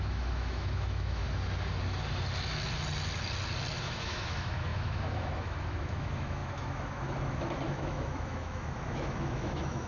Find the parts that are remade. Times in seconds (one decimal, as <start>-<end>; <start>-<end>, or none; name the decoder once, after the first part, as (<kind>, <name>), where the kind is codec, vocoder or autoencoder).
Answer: 0.0-1.2 (autoencoder, DAC-VAE); 3.8-9.9